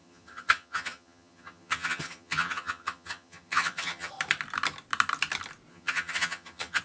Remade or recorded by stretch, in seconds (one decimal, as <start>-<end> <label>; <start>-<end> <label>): 0.0-4.1 remade; 4.1-5.7 recorded; 5.7-6.8 remade

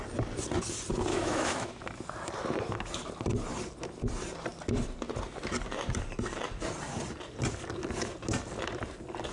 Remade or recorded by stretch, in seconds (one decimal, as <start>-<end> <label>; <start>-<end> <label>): 0.0-1.1 recorded; 1.1-1.7 remade; 1.7-9.3 recorded

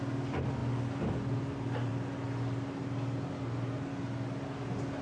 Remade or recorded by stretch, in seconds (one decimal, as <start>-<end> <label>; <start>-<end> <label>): 0.0-5.0 recorded

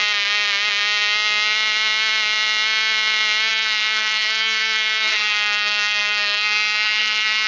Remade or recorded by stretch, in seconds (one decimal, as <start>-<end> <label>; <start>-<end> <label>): 0.0-3.5 recorded; 3.5-7.5 remade

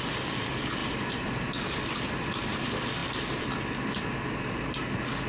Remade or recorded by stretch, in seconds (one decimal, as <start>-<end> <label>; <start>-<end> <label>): 0.0-0.8 recorded; 0.8-1.8 remade; 1.8-5.3 recorded

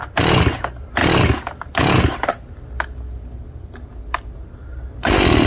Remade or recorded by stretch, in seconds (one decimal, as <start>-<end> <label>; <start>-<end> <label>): 0.0-5.5 recorded